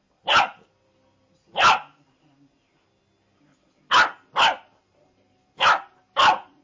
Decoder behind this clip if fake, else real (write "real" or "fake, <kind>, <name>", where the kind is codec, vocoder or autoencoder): real